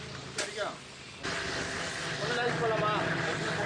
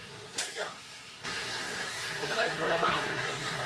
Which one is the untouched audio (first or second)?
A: first